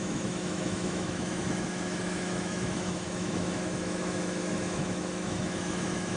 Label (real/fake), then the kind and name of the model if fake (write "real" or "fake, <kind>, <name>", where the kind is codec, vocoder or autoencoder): fake, autoencoder, DAC-VAE